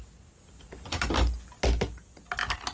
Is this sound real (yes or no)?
yes